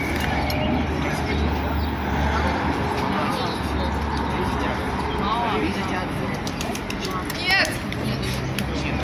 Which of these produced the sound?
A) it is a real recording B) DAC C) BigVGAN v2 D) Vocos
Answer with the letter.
A